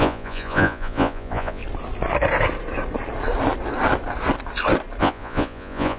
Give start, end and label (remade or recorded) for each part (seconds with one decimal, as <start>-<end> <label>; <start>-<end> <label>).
0.0-1.6 remade; 1.6-5.0 recorded; 5.0-6.0 remade